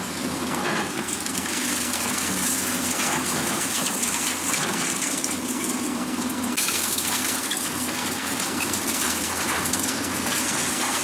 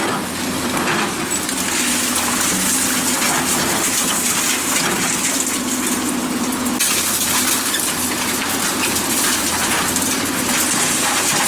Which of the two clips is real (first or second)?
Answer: second